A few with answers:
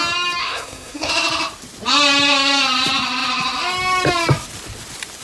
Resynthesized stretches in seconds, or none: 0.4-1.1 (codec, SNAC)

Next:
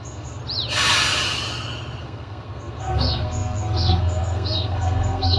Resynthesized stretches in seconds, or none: 0.0-0.4 (codec, SNAC); 2.0-5.4